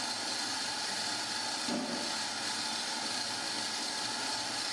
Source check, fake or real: real